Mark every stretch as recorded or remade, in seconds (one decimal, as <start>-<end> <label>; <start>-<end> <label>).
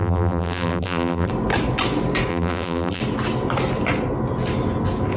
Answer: 0.0-1.3 remade; 1.3-2.3 recorded; 2.3-3.0 remade; 3.0-5.2 recorded